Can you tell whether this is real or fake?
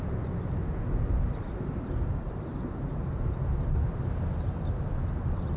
fake